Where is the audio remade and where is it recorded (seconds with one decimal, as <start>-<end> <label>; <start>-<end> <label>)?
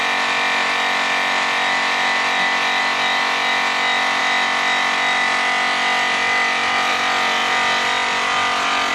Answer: 0.0-8.9 recorded